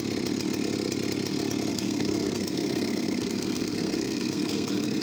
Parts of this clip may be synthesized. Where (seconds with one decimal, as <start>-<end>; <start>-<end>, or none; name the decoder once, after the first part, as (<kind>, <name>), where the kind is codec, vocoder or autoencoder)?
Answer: 1.7-5.0 (codec, SNAC)